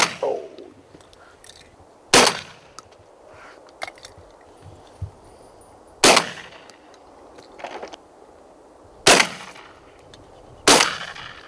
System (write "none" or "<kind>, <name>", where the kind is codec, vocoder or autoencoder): none